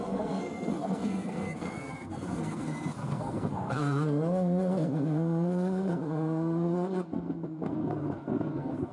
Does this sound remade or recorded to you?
remade